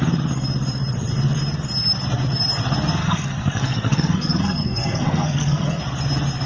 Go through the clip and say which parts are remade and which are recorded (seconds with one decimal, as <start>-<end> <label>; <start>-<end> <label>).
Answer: 0.0-3.0 recorded; 3.0-5.8 remade; 5.8-6.5 recorded